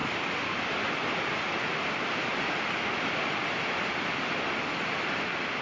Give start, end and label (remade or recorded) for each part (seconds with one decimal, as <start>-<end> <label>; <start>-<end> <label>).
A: 0.0-5.6 recorded